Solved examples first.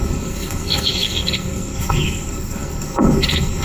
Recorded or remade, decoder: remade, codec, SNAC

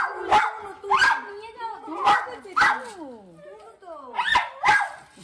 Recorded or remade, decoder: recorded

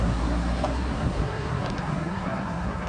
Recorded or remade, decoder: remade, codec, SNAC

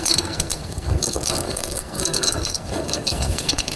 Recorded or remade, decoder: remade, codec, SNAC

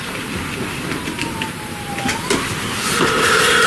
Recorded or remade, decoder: recorded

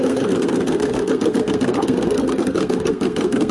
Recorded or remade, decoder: remade, codec, SNAC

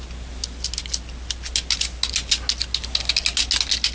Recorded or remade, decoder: recorded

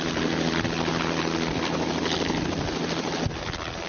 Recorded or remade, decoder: recorded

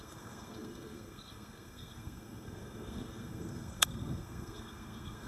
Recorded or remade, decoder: remade, codec, SNAC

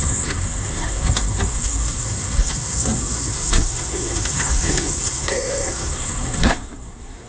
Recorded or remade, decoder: remade, codec, SNAC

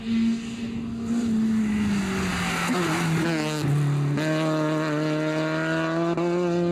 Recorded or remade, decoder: recorded